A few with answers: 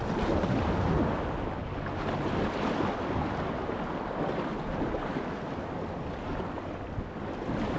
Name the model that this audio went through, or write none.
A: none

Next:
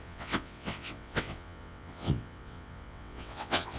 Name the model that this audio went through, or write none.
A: vocoder, WaveNeXt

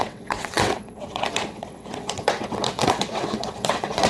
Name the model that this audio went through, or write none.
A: vocoder, WaveNeXt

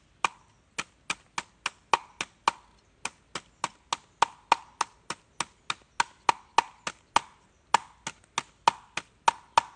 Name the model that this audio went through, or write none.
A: none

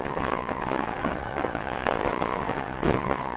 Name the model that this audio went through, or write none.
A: vocoder, WaveNeXt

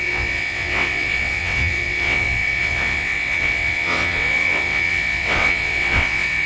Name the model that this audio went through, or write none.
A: vocoder, WaveNeXt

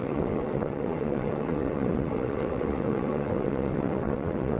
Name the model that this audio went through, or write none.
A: vocoder, WaveNeXt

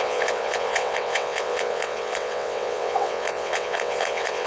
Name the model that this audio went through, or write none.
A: vocoder, WaveNeXt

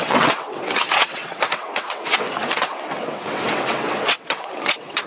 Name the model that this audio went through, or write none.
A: vocoder, WaveNeXt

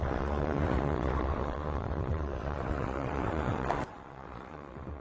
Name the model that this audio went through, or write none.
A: vocoder, WaveNeXt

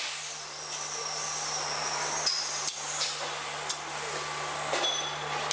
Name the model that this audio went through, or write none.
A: none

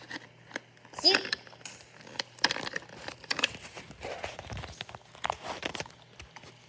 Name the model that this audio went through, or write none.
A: none